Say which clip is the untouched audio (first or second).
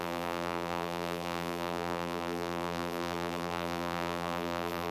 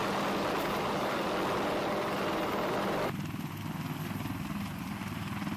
second